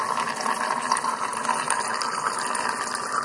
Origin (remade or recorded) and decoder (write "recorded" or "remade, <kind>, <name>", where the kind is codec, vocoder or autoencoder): recorded